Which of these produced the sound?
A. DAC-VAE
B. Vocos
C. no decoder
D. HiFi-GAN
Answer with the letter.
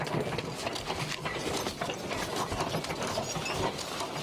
C